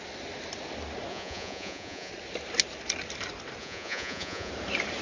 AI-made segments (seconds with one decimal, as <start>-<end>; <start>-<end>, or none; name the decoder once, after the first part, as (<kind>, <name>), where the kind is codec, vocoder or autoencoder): 1.1-2.1 (vocoder, Vocos); 3.6-4.5